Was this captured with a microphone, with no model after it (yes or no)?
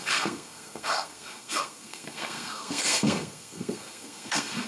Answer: no